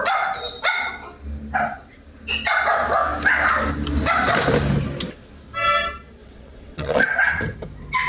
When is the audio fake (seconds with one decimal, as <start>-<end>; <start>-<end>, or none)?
6.2-7.0